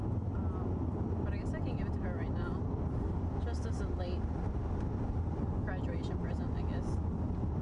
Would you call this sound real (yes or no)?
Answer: yes